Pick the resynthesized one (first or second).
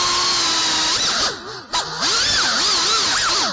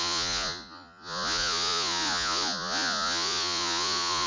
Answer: second